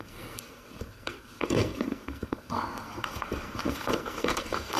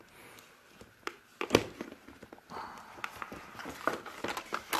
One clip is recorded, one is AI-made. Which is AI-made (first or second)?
first